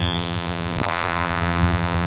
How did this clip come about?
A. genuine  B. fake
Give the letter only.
B